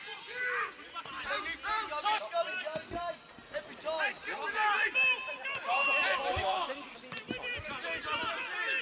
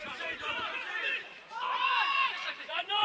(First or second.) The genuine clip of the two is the first